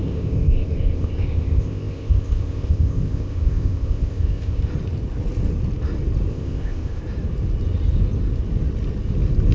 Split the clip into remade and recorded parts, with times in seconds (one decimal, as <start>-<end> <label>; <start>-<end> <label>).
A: 0.0-4.7 remade; 4.7-6.3 recorded; 6.3-7.0 remade; 7.0-9.5 recorded